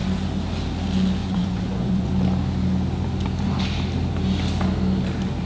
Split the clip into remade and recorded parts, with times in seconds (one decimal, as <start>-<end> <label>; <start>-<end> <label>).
0.0-1.2 recorded; 1.2-2.1 remade; 2.1-5.5 recorded